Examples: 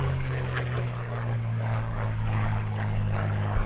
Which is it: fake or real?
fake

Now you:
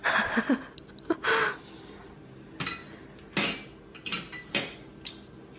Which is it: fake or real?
real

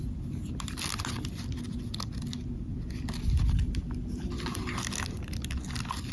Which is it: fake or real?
real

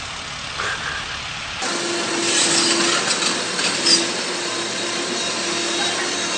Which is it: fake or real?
real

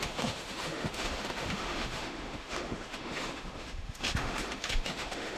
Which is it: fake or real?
fake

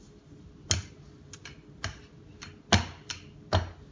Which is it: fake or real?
real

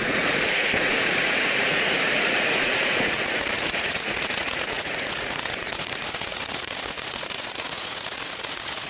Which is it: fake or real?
fake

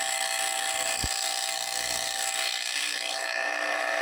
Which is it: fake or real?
fake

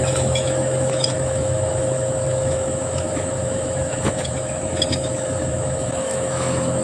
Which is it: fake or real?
fake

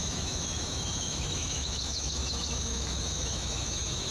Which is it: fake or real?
fake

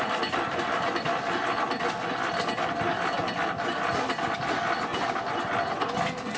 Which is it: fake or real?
real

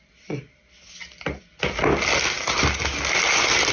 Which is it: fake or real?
real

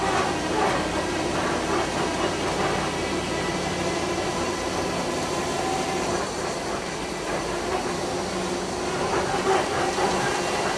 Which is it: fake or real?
real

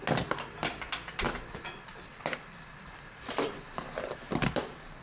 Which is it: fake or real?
real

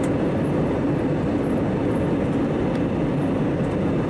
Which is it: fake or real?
real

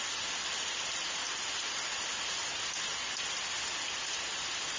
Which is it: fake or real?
real